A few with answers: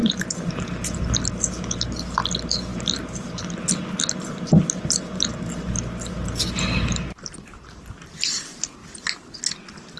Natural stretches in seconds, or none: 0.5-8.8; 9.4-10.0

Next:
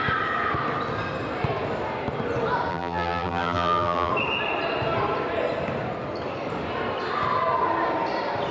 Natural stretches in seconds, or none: 0.0-2.7; 4.1-8.5